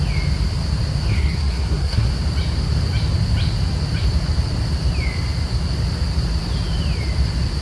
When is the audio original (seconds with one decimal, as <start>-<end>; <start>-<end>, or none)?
0.0-1.1; 2.1-7.6